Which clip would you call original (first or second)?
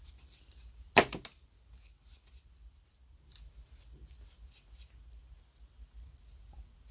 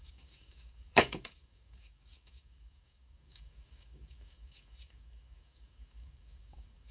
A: first